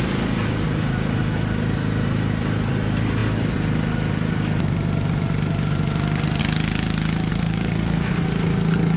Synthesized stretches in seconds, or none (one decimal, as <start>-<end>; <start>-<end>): 7.3-8.1